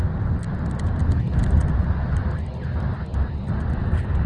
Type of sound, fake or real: real